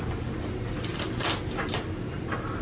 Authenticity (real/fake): real